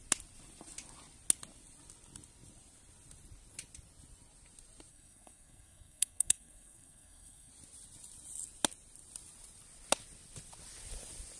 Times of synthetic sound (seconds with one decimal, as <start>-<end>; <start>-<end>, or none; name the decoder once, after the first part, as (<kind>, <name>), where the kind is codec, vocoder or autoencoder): 4.9-7.5 (codec, SNAC)